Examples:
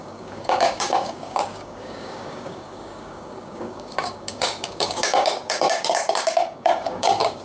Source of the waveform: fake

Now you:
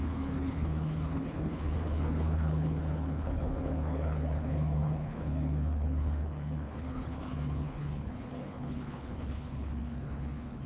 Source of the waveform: fake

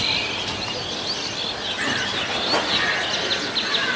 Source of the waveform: real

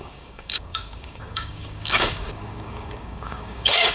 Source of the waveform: fake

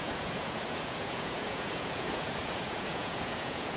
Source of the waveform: fake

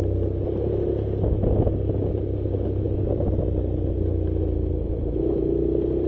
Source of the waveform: real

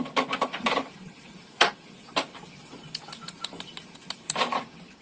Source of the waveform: fake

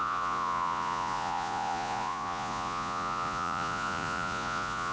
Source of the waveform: fake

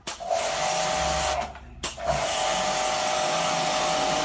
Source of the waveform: real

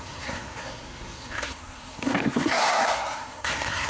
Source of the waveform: fake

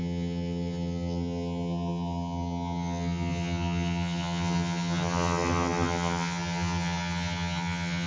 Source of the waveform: fake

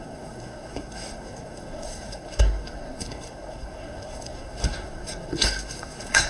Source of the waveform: fake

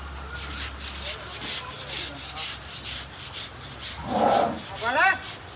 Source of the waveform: real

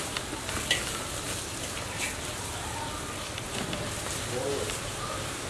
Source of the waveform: real